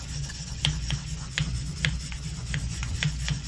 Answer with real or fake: fake